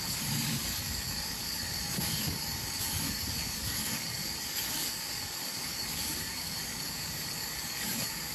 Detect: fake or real fake